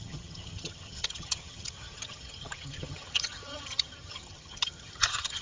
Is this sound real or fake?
fake